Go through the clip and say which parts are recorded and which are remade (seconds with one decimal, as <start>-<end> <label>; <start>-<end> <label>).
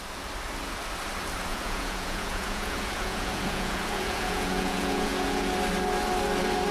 0.0-1.5 recorded; 1.5-5.5 remade; 5.5-6.7 recorded